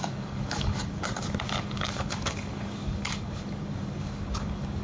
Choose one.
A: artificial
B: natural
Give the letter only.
A